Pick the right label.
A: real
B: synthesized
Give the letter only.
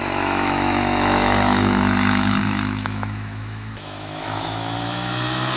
B